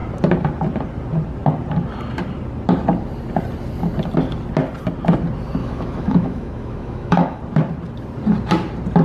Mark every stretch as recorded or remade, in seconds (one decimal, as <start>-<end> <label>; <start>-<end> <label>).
0.0-5.6 recorded; 5.6-7.4 remade; 7.4-9.0 recorded